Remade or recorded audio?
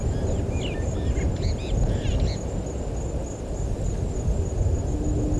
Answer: recorded